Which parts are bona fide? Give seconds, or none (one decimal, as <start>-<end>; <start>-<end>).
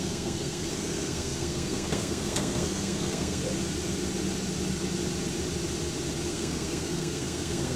3.4-6.3